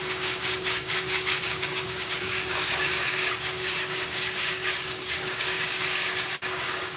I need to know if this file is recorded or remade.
remade